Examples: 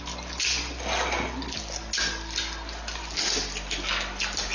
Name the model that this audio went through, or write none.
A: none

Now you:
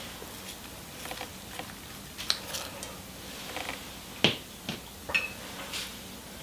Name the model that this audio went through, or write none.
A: none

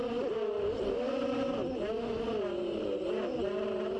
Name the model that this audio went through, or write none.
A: none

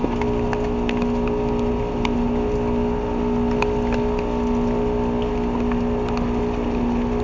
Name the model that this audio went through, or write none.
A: none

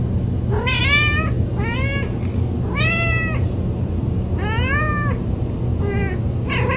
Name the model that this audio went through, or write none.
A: none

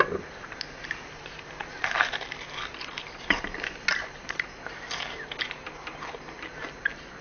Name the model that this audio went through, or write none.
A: none